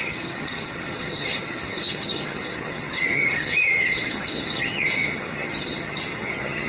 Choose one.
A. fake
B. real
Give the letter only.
A